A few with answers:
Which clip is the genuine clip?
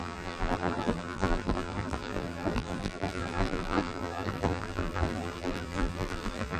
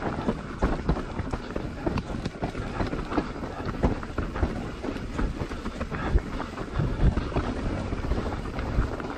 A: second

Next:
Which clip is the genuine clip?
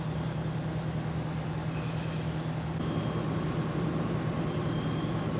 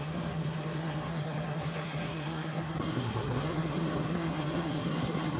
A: first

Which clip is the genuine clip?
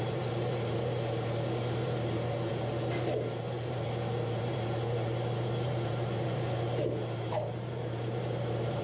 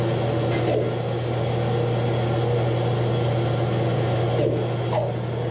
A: second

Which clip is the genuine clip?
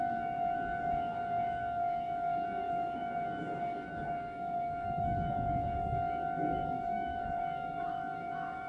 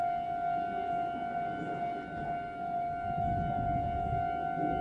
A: second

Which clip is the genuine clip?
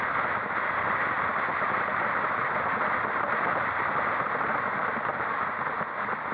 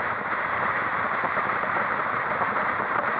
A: first